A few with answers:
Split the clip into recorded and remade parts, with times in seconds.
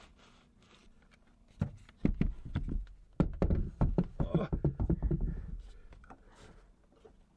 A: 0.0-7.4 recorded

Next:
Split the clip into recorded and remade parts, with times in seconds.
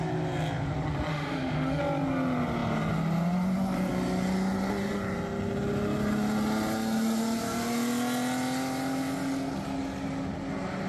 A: 0.0-1.1 recorded; 1.1-1.8 remade; 1.8-10.9 recorded